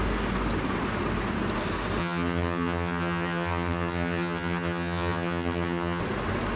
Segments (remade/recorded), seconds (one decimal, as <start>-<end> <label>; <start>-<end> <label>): 0.0-2.0 recorded; 2.0-6.0 remade; 6.0-6.6 recorded